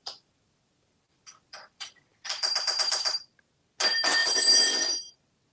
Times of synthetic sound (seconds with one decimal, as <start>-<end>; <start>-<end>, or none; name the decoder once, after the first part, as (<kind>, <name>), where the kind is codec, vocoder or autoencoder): 0.0-3.3 (vocoder, BigVGAN v2); 4.2-5.1